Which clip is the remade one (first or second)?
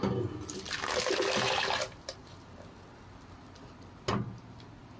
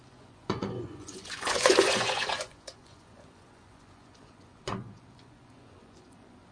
second